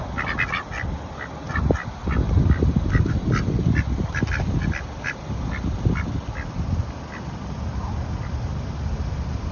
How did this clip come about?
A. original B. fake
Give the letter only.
A